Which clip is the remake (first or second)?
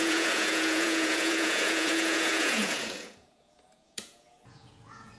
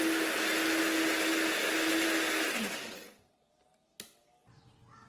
first